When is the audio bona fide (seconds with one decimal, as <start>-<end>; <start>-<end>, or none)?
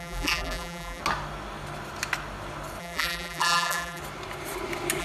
1.0-2.8; 4.0-5.0